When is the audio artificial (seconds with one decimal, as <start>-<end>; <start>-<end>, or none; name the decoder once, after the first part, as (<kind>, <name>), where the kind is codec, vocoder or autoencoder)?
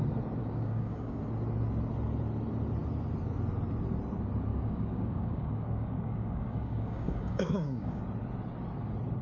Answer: 0.4-1.2 (codec, DAC); 4.5-8.0